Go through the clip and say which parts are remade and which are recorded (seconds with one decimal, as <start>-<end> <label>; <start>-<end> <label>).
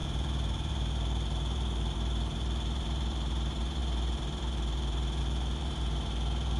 0.0-6.6 remade